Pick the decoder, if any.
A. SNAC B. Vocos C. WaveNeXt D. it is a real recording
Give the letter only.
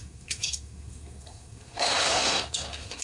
A